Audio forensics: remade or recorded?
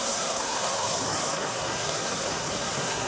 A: remade